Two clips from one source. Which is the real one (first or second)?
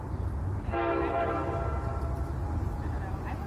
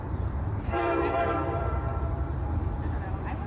first